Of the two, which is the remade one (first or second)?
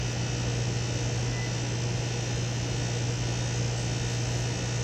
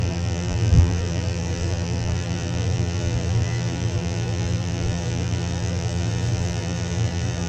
second